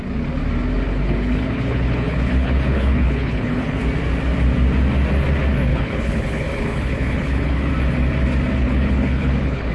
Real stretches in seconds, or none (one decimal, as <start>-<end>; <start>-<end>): 0.0-0.9; 3.8-5.7; 7.7-8.6